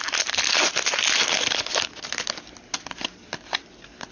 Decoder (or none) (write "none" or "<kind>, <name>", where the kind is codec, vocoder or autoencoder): none